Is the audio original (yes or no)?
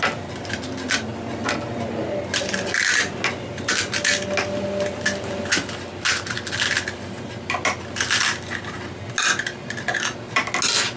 yes